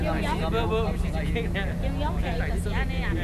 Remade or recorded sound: recorded